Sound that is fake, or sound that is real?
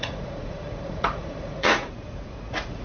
fake